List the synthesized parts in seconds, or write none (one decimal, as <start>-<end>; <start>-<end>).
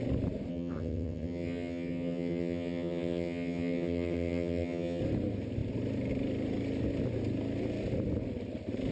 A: 0.5-5.0